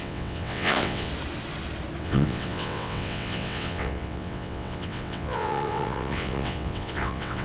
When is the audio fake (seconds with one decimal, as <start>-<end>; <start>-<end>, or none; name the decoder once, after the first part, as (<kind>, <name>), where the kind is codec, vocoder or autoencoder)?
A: 0.0-1.1 (vocoder, WaveNeXt); 2.0-7.4